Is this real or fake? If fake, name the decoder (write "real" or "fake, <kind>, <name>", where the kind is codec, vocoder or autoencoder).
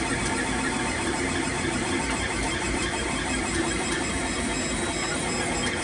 fake, vocoder, BigVGAN v2